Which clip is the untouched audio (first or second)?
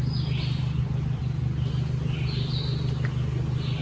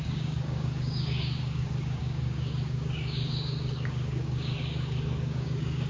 first